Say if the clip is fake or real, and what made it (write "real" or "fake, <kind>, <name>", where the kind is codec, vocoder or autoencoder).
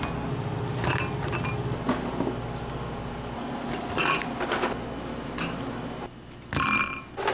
real